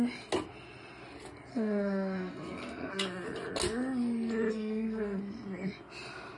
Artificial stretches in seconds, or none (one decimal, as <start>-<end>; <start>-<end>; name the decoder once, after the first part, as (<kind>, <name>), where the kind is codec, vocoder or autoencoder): 1.5-2.9 (codec, SNAC); 4.5-5.2